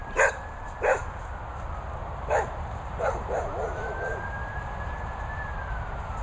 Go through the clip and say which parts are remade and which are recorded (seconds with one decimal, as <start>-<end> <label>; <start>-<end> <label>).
0.0-2.0 recorded; 2.0-4.6 remade; 4.6-6.2 recorded